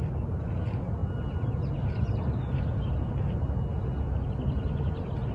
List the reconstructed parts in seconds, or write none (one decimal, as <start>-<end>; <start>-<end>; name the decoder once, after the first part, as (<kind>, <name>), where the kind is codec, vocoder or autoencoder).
none